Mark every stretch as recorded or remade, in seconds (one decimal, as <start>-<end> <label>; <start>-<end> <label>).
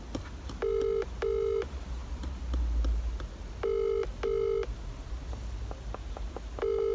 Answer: 0.0-6.9 recorded